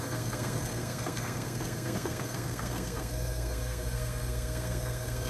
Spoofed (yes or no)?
yes